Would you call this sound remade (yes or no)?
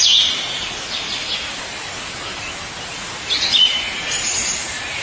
no